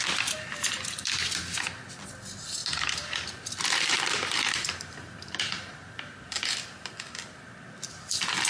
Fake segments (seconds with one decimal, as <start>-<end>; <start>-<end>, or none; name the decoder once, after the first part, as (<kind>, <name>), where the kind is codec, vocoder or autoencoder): 2.6-6.9 (vocoder, BigVGAN v2)